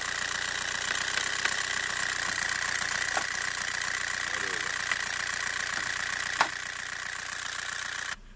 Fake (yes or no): no